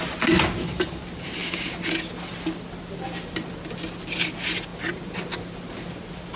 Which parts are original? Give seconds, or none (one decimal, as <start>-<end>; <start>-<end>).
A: 0.0-6.4